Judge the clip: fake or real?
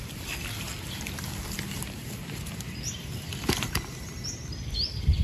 real